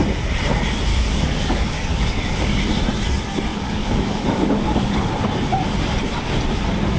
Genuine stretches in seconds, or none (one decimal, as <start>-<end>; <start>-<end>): 0.0-0.9; 2.6-3.5; 5.1-7.0